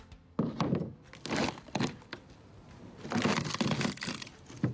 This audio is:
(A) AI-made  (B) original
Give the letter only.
B